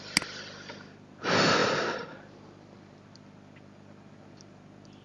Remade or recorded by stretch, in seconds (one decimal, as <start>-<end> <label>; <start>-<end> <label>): 0.0-5.0 recorded